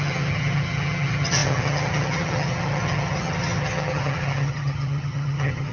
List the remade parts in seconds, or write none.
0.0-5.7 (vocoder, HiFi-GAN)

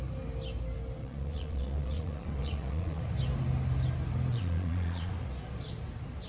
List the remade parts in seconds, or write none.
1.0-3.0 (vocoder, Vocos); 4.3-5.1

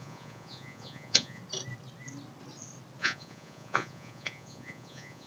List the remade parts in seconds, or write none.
0.0-1.4 (vocoder, Vocos); 3.0-5.3

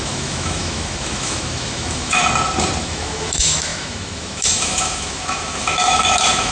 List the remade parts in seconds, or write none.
0.0-2.2 (autoencoder, DAC-VAE); 2.8-6.5